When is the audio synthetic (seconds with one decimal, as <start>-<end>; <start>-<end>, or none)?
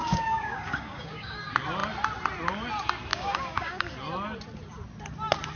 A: 0.0-1.4; 3.1-3.9